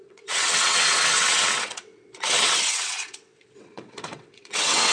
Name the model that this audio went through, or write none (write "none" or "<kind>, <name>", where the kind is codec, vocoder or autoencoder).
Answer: vocoder, WaveNeXt